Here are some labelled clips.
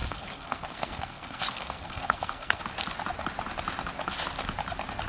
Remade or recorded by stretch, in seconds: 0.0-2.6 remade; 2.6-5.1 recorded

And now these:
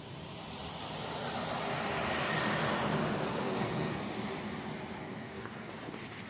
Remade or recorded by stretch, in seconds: 0.0-3.3 recorded; 3.3-4.0 remade; 4.0-5.0 recorded; 5.0-5.7 remade; 5.7-6.3 recorded

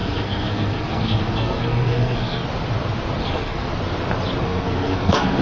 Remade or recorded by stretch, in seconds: 0.0-2.4 remade; 2.4-3.2 recorded; 3.2-3.7 remade; 3.7-4.4 recorded; 4.4-5.4 remade

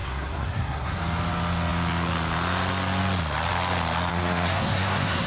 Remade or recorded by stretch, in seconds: 0.0-1.0 remade; 1.0-4.1 recorded; 4.1-5.3 remade

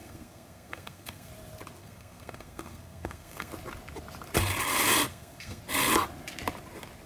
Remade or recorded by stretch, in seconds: 0.0-1.3 remade; 1.3-1.8 recorded; 1.8-3.5 remade; 3.5-5.1 recorded; 5.1-5.6 remade; 5.6-7.1 recorded

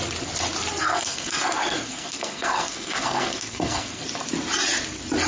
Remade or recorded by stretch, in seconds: 0.0-0.8 recorded; 0.8-4.0 remade; 4.0-5.3 recorded

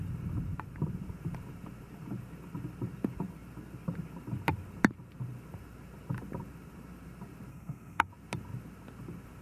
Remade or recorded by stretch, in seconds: 0.0-7.5 recorded; 7.5-8.1 remade; 8.1-9.4 recorded